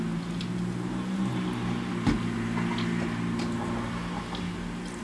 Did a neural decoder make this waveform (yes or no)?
no